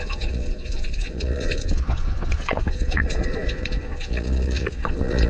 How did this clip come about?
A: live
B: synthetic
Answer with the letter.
B